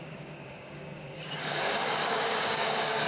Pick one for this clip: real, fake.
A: fake